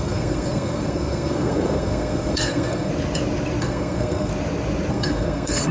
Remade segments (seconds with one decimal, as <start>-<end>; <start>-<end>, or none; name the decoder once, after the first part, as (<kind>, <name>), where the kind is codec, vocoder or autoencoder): 0.0-2.9 (codec, SNAC); 3.6-4.3; 4.9-5.7